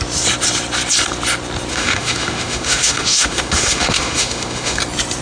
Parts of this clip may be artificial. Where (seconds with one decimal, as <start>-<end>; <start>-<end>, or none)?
1.7-4.8